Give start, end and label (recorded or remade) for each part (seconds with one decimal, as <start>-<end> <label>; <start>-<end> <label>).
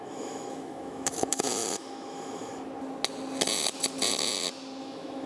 0.0-2.5 remade; 2.5-4.8 recorded; 4.8-5.3 remade